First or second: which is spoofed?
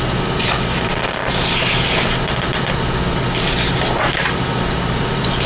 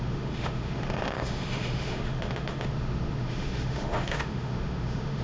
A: second